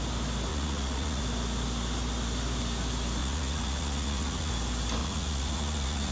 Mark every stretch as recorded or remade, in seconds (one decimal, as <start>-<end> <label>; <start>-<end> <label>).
0.0-0.5 recorded; 0.5-1.2 remade; 1.2-3.2 recorded; 3.2-4.5 remade; 4.5-5.0 recorded; 5.0-6.1 remade